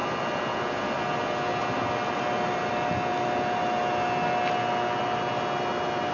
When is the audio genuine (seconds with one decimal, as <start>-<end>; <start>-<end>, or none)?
0.0-6.1